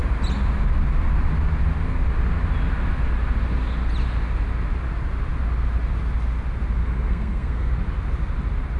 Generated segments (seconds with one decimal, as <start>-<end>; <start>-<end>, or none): 6.8-7.7